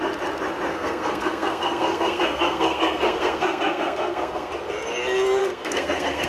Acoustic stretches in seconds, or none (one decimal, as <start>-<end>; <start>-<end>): 0.0-0.7; 4.5-5.4

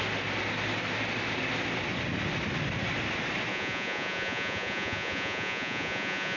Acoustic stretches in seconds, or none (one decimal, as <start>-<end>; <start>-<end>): 0.0-3.5

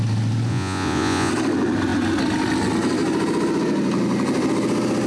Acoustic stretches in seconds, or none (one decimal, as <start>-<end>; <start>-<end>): 0.0-0.5; 1.3-5.1

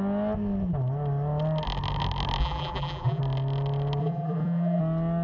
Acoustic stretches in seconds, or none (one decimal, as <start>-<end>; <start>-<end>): 0.0-2.4; 3.2-4.0; 4.8-5.2

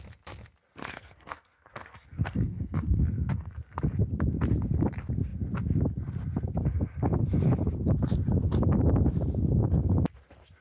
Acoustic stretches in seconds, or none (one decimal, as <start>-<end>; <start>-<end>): 0.0-0.8; 3.5-10.6